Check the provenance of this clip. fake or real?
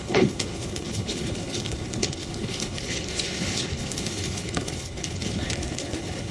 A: fake